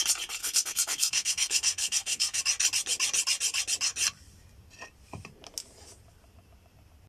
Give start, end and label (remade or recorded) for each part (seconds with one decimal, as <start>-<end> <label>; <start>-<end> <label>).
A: 0.0-0.4 recorded; 0.4-2.4 remade; 2.4-7.1 recorded